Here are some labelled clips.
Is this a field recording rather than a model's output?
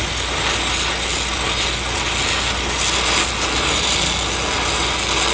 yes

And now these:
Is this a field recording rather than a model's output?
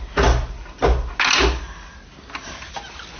yes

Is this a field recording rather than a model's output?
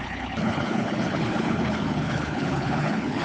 no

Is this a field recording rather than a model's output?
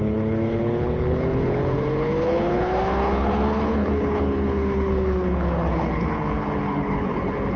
no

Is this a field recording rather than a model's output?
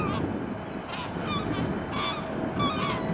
yes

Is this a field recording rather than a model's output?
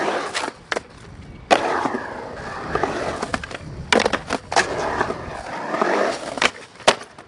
yes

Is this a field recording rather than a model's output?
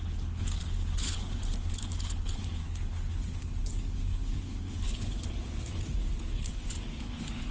no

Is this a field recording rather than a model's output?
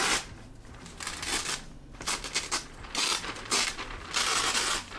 yes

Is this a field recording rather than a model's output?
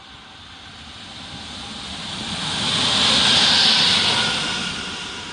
yes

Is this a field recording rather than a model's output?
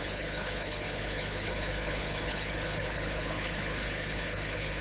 no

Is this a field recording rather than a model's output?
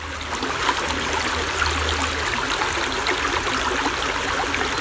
yes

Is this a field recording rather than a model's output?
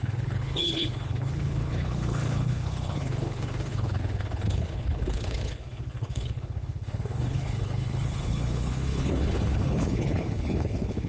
no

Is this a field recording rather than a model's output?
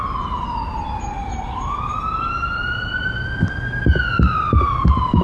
yes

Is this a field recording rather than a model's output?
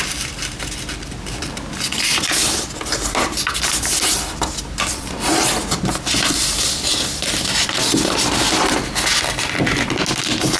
yes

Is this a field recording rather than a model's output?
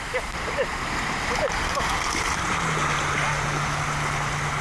yes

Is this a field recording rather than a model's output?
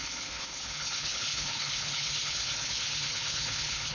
no